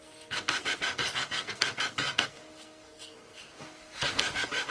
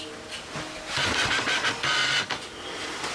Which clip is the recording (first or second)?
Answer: second